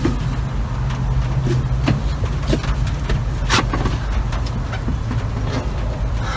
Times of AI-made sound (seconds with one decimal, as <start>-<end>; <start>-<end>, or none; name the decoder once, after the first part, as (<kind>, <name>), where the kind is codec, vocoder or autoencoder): none